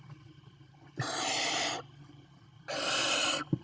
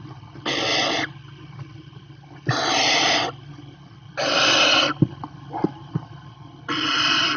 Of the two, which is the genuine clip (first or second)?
second